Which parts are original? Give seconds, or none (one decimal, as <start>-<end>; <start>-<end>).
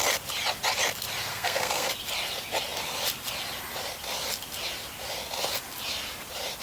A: 0.0-1.3; 1.9-6.6